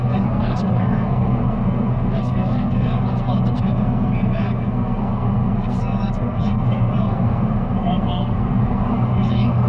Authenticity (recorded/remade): remade